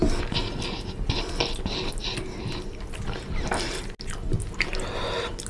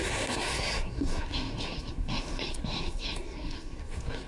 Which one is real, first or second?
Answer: first